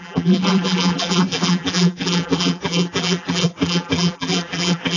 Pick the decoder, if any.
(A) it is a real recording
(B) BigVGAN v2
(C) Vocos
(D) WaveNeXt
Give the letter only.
B